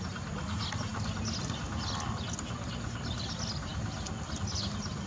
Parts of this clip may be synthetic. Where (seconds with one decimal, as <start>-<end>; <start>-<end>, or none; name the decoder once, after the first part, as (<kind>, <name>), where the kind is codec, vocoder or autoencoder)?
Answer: none